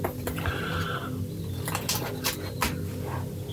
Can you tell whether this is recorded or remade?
recorded